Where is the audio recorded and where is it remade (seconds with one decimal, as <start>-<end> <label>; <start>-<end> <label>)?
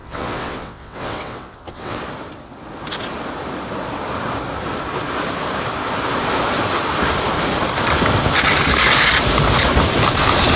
0.0-2.0 remade; 2.0-10.6 recorded